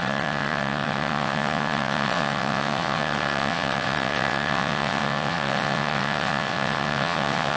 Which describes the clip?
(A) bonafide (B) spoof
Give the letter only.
B